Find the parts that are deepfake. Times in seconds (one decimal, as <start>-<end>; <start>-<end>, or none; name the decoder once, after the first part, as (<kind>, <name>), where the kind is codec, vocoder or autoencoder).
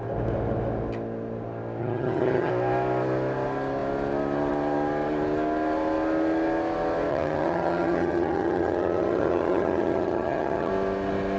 1.8-2.5 (vocoder, HiFi-GAN); 7.1-10.7